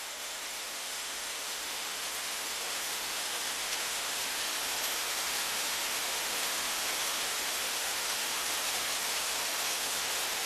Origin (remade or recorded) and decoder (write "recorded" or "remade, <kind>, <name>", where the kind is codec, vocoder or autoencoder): remade, autoencoder, DAC-VAE